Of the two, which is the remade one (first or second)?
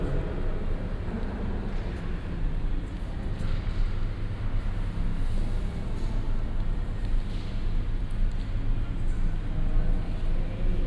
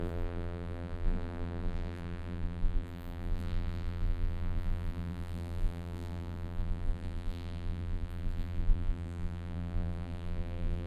second